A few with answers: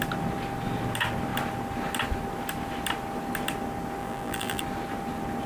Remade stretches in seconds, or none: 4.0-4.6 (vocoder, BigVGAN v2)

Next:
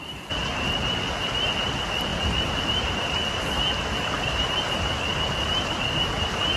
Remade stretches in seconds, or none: none

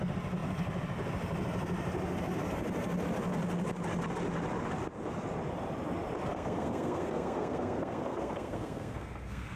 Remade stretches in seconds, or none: 6.3-9.6 (codec, SNAC)

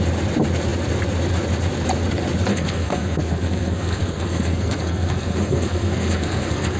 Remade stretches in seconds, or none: 2.5-6.8 (codec, SNAC)

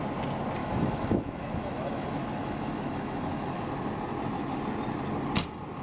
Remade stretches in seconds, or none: 0.6-3.6 (autoencoder, DAC-VAE)

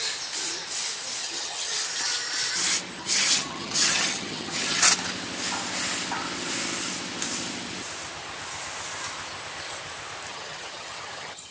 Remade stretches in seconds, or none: 1.2-1.7 (vocoder, HiFi-GAN); 3.0-4.8; 10.3-11.5

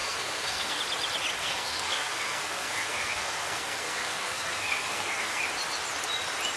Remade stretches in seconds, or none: 0.0-0.8 (codec, SNAC); 1.4-5.4

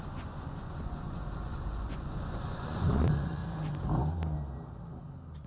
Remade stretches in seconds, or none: 0.0-3.4 (vocoder, Vocos)